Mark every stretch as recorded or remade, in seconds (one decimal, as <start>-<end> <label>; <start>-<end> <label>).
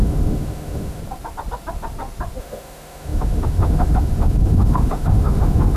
0.0-1.0 remade; 1.0-2.4 recorded; 2.4-5.8 remade